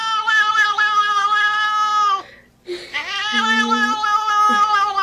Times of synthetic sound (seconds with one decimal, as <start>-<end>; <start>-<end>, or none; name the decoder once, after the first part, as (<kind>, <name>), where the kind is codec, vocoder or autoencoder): none